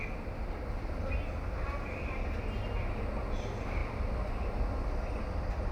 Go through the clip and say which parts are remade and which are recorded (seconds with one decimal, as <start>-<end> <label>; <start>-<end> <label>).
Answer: 0.0-5.7 recorded